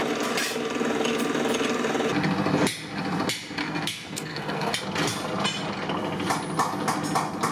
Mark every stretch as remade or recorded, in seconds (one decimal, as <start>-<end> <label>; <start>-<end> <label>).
0.0-3.6 recorded; 3.6-4.7 remade; 4.7-7.5 recorded